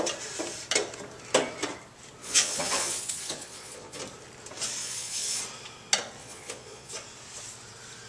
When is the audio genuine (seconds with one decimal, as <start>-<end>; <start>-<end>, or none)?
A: 0.0-2.2; 4.0-4.8; 5.4-6.2; 6.9-8.1